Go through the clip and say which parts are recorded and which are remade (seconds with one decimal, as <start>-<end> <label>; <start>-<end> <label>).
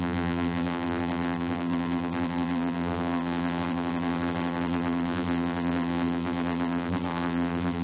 0.0-7.8 remade